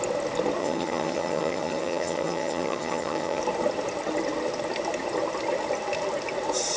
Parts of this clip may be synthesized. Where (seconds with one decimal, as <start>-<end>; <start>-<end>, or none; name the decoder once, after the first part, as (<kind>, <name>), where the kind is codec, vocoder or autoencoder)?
0.6-3.4 (vocoder, HiFi-GAN)